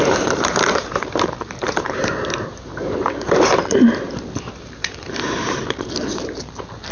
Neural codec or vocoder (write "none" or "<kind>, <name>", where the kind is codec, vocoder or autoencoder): vocoder, BigVGAN v2